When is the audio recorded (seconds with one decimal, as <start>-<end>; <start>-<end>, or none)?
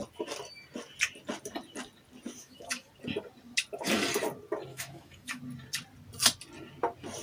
0.0-2.4; 2.9-4.7; 5.4-7.2